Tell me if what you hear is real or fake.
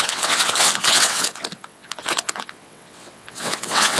fake